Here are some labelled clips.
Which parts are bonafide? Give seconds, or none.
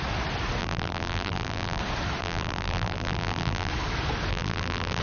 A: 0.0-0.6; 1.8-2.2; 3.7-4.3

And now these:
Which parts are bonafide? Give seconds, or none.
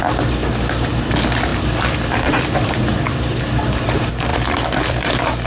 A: 0.0-1.5; 3.4-4.3; 5.1-5.5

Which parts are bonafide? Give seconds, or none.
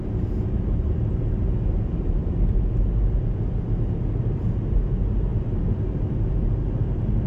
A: 0.0-7.3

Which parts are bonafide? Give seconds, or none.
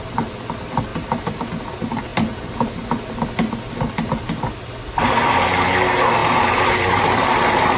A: 0.0-0.9; 1.5-6.2; 7.2-7.8